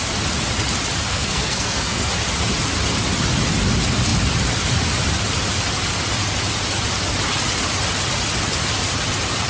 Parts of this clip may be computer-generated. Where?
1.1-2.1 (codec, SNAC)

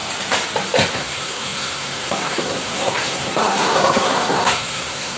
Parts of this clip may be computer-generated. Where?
0.9-5.2 (codec, SNAC)

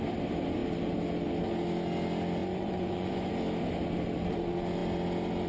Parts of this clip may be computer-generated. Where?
2.4-3.3 (vocoder, Vocos)